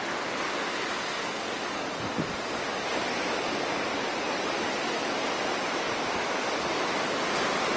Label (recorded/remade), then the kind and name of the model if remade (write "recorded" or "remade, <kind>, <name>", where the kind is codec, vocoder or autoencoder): recorded